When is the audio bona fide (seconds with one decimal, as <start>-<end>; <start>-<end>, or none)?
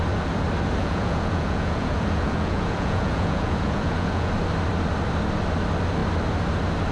0.0-0.8; 4.3-6.9